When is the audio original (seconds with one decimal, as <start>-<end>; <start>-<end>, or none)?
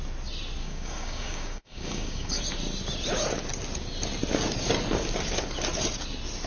0.0-0.6; 2.4-6.5